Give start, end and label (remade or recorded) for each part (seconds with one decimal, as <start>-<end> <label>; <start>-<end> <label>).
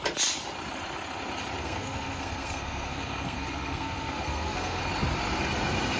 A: 0.0-1.6 recorded; 1.6-4.8 remade; 4.8-6.0 recorded